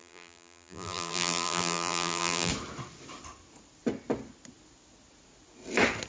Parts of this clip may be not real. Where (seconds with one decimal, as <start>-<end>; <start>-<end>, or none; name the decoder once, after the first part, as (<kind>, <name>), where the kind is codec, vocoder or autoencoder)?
0.0-2.5 (vocoder, BigVGAN v2)